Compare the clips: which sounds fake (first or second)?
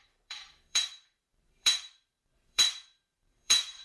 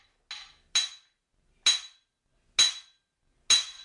first